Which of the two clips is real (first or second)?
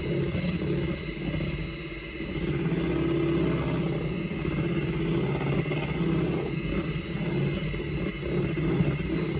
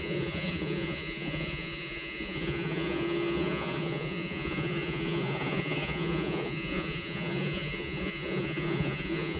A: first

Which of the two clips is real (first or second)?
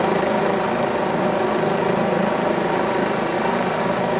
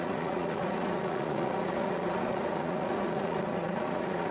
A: first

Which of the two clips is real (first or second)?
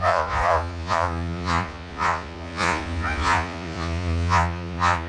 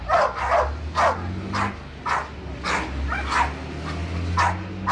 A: second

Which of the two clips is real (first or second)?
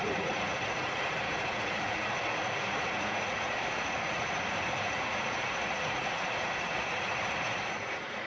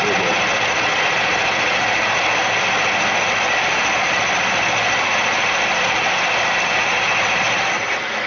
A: second